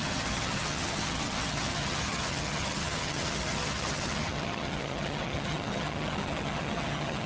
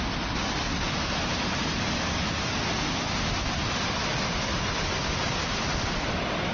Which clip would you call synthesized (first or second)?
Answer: first